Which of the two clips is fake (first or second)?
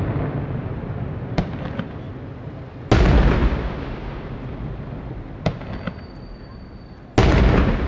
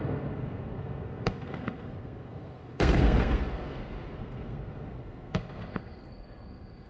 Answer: second